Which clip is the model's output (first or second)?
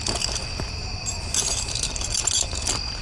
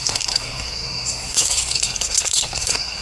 second